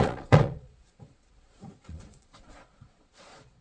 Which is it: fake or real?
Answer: fake